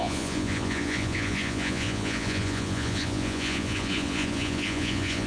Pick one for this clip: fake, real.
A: fake